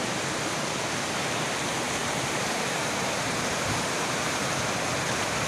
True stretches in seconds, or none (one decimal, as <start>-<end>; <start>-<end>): 0.0-2.0; 4.5-5.5